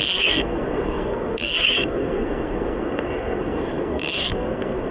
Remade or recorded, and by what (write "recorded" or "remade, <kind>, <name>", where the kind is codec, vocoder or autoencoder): remade, codec, SNAC